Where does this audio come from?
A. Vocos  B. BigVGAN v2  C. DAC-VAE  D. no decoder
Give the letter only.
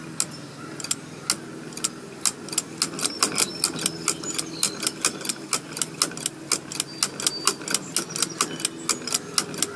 D